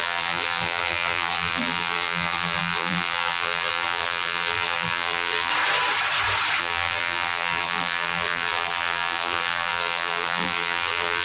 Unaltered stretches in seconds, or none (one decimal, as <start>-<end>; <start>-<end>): 5.5-6.6